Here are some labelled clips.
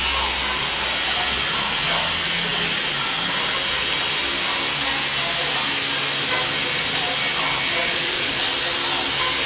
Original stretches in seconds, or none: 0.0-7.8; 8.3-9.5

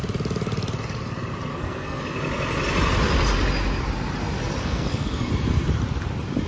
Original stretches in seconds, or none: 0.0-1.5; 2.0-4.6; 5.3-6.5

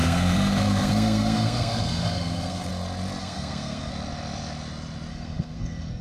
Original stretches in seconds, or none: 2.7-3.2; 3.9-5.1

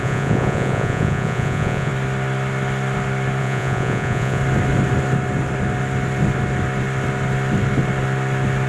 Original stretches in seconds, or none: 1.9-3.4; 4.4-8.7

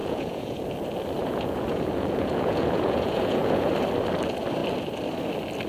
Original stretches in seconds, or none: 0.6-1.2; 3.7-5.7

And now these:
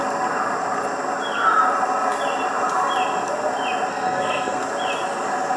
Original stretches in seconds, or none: 0.0-3.9; 4.6-5.6